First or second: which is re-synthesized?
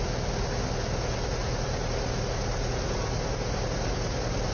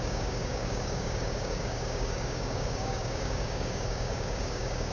second